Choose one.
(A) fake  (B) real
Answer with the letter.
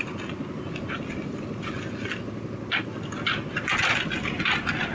B